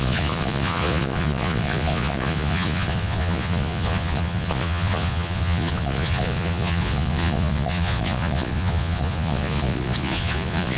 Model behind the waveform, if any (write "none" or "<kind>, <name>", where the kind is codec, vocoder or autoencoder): vocoder, Vocos